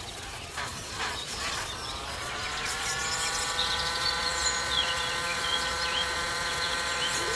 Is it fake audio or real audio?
fake